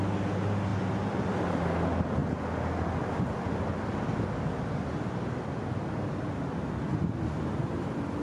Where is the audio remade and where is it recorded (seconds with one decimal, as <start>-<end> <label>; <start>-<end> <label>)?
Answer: 0.0-8.2 recorded